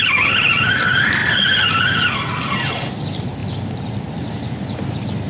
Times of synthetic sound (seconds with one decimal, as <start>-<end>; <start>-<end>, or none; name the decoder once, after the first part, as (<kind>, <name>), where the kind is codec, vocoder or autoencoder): none